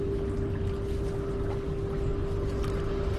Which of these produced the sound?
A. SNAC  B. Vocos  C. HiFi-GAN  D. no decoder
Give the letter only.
D